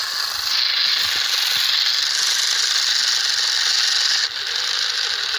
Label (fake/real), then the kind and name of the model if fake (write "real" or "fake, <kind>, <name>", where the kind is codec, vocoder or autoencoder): real